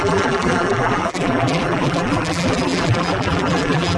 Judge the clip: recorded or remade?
remade